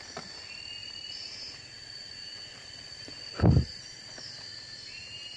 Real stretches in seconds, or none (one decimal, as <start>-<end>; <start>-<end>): 0.0-5.4